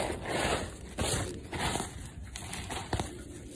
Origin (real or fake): real